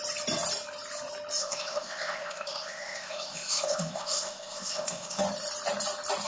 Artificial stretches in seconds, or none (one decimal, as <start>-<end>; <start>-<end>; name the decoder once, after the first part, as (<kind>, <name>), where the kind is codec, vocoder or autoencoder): 1.4-5.2 (codec, ZipCodec)